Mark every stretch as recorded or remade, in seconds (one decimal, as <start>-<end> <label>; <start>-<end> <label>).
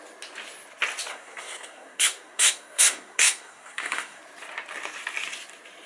0.0-1.1 recorded; 1.1-4.2 remade; 4.2-5.9 recorded